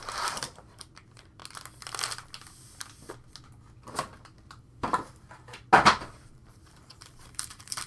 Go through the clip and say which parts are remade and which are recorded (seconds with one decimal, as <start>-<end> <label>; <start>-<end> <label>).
0.0-1.4 remade; 1.4-6.1 recorded; 6.1-7.9 remade